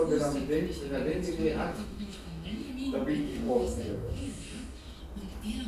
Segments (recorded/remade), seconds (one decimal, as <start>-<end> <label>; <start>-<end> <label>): 0.0-1.7 recorded; 1.7-2.7 remade; 2.7-3.2 recorded; 3.2-5.0 remade; 5.0-5.7 recorded